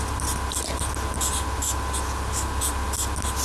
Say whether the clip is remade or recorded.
recorded